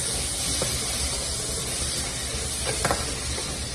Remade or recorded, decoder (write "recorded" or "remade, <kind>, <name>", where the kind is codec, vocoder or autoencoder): recorded